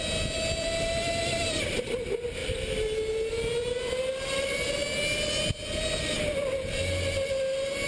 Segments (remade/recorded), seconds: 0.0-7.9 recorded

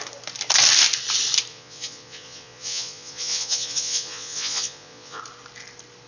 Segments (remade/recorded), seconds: 0.0-1.5 recorded; 1.5-5.2 remade; 5.2-6.1 recorded

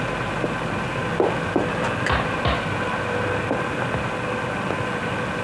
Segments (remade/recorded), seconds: 0.0-5.4 recorded

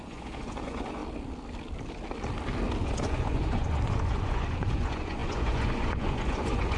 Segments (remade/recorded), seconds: 0.0-1.0 remade; 1.0-2.8 recorded; 2.8-6.8 remade

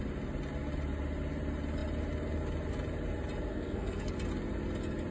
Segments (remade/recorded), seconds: 0.0-3.5 recorded; 3.5-4.1 remade; 4.1-5.1 recorded

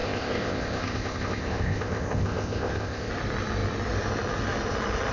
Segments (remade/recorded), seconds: 0.0-3.1 remade; 3.1-5.1 recorded

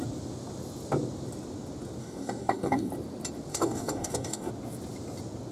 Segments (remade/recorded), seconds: 0.0-2.0 recorded; 2.0-2.9 remade; 2.9-3.5 recorded; 3.5-4.5 remade; 4.5-5.5 recorded